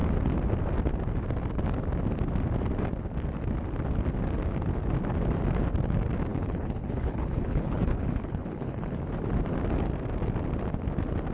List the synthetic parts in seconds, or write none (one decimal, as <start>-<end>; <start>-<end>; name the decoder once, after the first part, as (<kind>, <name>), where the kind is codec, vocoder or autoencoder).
6.3-9.0 (codec, HILCodec)